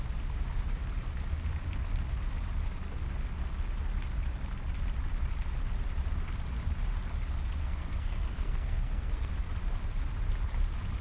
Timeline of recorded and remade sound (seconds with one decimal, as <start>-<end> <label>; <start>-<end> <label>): 0.0-7.6 recorded; 7.6-9.3 remade; 9.3-11.0 recorded